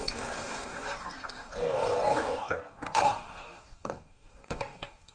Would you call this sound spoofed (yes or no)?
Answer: yes